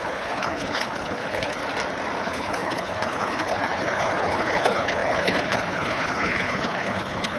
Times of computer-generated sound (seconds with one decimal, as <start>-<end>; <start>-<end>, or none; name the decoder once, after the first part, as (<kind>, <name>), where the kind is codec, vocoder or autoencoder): 0.0-1.6 (codec, HILCodec); 2.2-7.4